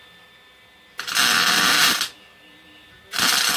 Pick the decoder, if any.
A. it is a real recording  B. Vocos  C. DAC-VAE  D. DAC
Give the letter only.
A